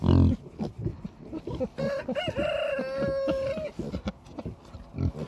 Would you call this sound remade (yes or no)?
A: no